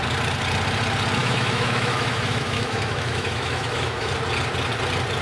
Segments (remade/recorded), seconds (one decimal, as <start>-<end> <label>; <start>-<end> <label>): 0.0-1.2 recorded; 1.2-4.1 remade; 4.1-5.2 recorded